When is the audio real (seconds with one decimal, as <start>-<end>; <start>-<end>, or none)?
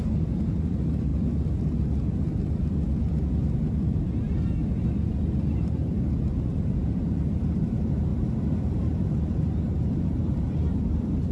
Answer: 1.1-3.5; 4.6-5.6